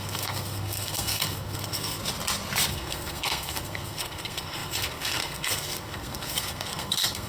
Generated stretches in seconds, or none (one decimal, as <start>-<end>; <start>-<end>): 0.0-2.0; 2.7-7.3